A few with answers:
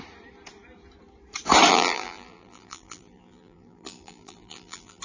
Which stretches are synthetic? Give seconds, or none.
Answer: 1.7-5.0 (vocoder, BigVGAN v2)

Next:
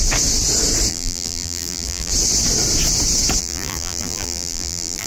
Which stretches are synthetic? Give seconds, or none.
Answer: 0.9-2.1 (vocoder, BigVGAN v2); 3.4-5.1

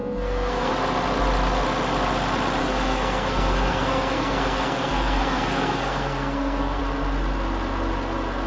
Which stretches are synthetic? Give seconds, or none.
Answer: 0.0-0.7 (codec, SNAC); 2.6-6.8

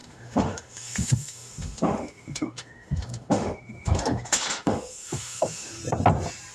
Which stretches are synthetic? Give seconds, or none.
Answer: 0.0-5.8 (autoencoder, DAC-VAE)

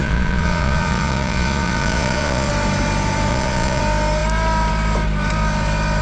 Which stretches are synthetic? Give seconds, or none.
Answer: 0.0-2.5 (vocoder, Vocos); 3.3-3.8

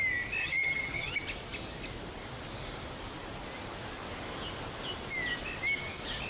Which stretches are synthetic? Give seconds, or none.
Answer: 0.4-1.1 (vocoder, HiFi-GAN)

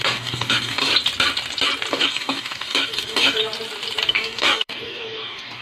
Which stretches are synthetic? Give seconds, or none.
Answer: 0.0-0.9 (codec, DAC); 1.9-3.4; 4.1-5.6

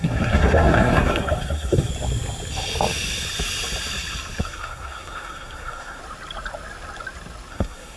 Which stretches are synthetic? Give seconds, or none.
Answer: 0.0-1.9 (codec, SNAC); 4.4-6.0; 7.5-8.0